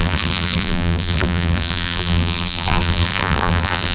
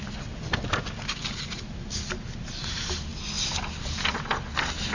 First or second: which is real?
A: second